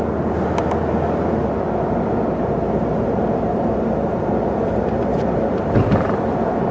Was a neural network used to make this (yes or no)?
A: no